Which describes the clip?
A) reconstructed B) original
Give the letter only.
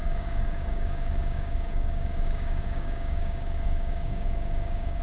A